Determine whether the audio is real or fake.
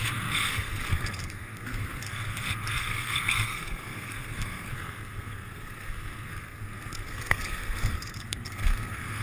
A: fake